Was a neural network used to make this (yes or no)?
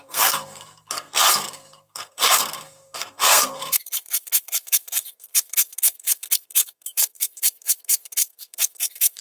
yes